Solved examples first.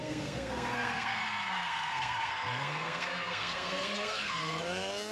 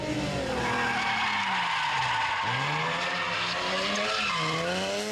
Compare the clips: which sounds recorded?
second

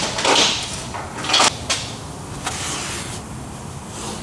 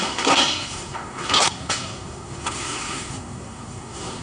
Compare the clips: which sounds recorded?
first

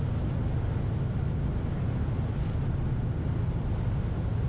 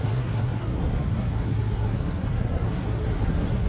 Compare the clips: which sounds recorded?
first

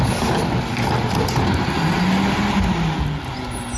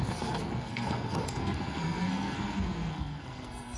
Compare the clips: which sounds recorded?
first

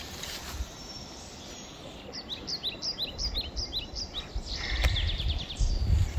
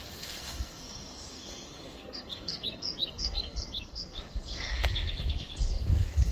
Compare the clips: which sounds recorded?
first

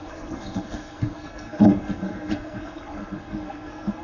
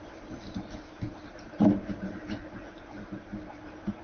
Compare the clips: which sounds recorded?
second